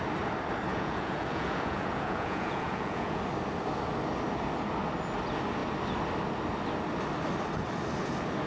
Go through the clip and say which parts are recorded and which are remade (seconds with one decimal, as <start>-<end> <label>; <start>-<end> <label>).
0.0-0.7 recorded; 0.7-3.2 remade; 3.2-8.5 recorded